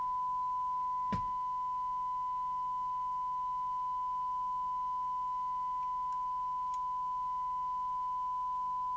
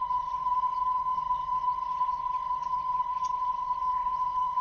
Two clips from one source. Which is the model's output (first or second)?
second